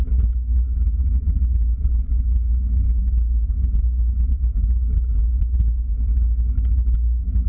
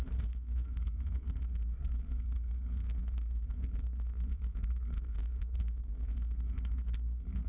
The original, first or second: first